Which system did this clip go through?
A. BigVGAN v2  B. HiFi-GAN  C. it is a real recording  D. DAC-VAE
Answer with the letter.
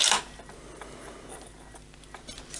C